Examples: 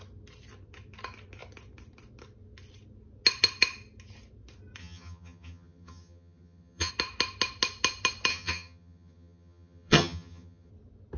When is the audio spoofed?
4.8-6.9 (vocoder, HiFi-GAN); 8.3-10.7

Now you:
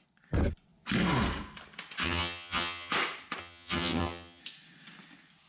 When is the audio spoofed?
2.0-2.9 (vocoder, HiFi-GAN); 3.4-4.4

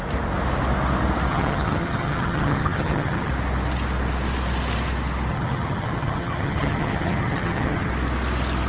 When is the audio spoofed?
1.3-3.3 (vocoder, HiFi-GAN); 5.3-7.9

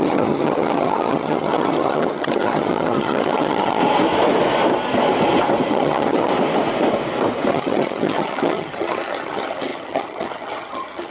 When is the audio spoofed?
0.0-3.8 (vocoder, HiFi-GAN); 5.7-6.3; 7.5-11.1

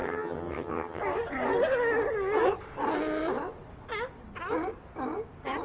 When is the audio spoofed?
0.0-1.0 (vocoder, HiFi-GAN)